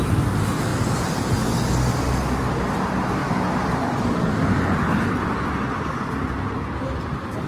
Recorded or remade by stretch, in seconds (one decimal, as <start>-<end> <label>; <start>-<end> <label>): 0.0-3.2 recorded; 3.2-6.1 remade; 6.1-7.5 recorded